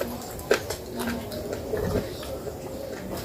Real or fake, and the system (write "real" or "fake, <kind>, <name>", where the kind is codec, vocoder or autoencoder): real